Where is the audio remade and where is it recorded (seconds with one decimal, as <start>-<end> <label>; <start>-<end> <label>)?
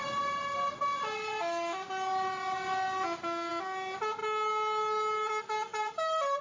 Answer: 0.0-6.4 recorded